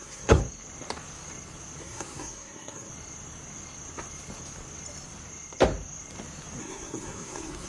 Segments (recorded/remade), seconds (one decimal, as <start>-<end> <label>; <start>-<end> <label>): 0.0-0.4 remade; 0.4-1.8 recorded; 1.8-2.9 remade; 2.9-6.6 recorded; 6.6-7.7 remade

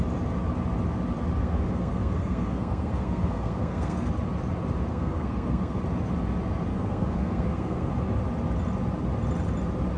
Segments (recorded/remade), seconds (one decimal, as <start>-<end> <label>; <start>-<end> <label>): 0.0-1.4 recorded; 1.4-4.1 remade; 4.1-4.9 recorded; 4.9-5.8 remade; 5.8-6.7 recorded; 6.7-7.9 remade; 7.9-10.0 recorded

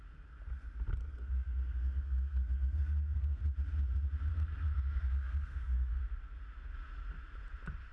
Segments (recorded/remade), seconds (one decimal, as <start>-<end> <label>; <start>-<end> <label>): 0.0-1.0 recorded; 1.0-3.4 remade; 3.4-4.3 recorded; 4.3-6.0 remade; 6.0-7.9 recorded

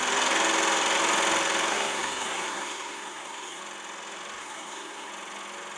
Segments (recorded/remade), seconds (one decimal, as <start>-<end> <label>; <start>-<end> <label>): 0.0-1.7 recorded; 1.7-3.6 remade; 3.6-4.4 recorded; 4.4-5.1 remade; 5.1-5.8 recorded